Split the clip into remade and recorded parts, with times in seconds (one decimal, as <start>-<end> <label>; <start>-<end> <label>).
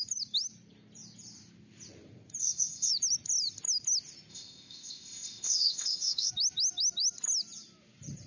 0.0-2.4 recorded; 2.4-2.9 remade; 2.9-4.3 recorded; 4.3-6.3 remade; 6.3-8.3 recorded